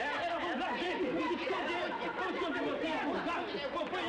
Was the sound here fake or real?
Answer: real